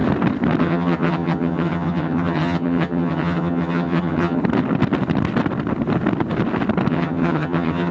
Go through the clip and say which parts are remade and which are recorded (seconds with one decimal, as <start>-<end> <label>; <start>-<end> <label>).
0.0-0.6 recorded; 0.6-4.4 remade; 4.4-6.9 recorded; 6.9-7.9 remade